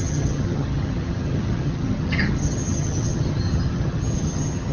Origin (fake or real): fake